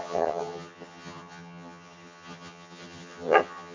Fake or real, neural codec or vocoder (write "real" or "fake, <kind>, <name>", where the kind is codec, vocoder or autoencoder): fake, vocoder, HiFi-GAN